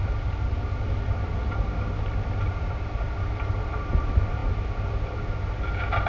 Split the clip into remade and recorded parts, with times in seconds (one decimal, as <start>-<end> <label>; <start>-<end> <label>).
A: 0.0-6.1 recorded